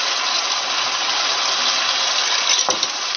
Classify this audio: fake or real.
real